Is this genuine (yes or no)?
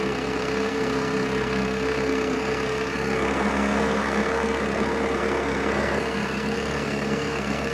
no